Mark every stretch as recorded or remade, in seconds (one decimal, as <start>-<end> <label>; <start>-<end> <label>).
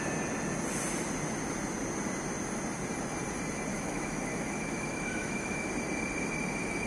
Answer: 0.0-3.7 recorded; 3.7-5.7 remade; 5.7-6.9 recorded